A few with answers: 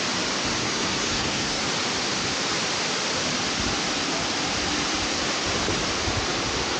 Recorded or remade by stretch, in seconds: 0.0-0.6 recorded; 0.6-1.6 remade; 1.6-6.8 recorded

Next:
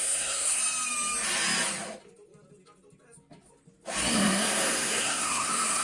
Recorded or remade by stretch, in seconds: 0.0-0.6 remade; 0.6-4.1 recorded; 4.1-5.8 remade